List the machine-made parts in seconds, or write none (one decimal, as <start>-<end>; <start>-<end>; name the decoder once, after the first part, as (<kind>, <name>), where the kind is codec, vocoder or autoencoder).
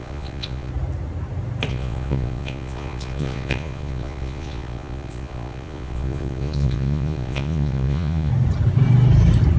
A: 0.0-0.7 (vocoder, Vocos); 1.7-8.3